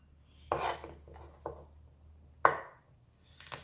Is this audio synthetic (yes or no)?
no